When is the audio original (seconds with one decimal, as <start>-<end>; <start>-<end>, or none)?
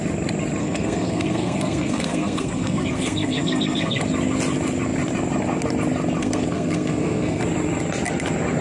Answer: 0.0-0.6; 4.0-6.2; 7.4-8.6